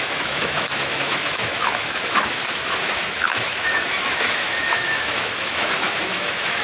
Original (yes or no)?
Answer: no